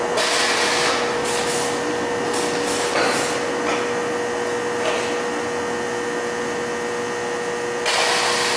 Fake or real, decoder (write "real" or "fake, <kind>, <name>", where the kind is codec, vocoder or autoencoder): real